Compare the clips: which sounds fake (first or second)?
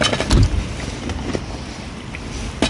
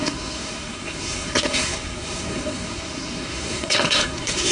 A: second